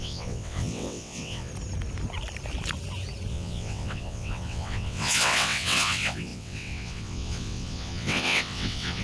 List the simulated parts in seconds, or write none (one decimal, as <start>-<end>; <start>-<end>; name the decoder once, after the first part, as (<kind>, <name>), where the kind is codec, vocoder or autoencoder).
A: 0.0-1.5 (vocoder, WaveNeXt); 3.3-9.0